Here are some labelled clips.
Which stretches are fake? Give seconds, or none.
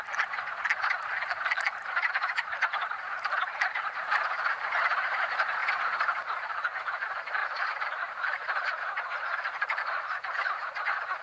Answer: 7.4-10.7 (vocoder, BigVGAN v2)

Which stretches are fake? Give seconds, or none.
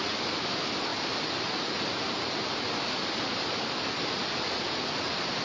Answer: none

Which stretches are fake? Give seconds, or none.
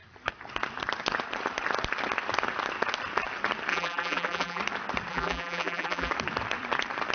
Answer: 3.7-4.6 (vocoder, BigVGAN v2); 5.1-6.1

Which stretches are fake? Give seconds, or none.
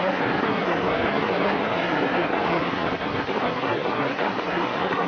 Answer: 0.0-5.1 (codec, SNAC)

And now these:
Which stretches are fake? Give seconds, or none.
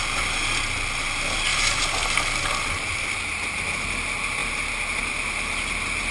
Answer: none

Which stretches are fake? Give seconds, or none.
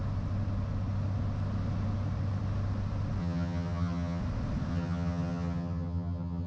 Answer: 3.2-4.2 (vocoder, HiFi-GAN); 4.7-6.5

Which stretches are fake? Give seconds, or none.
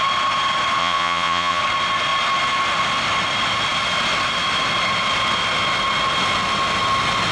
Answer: 0.8-1.6 (vocoder, Vocos)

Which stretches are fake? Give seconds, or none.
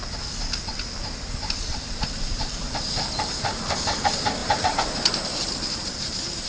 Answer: 1.4-2.6 (vocoder, BigVGAN v2); 4.4-6.5